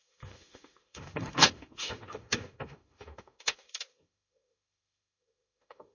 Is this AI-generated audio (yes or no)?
yes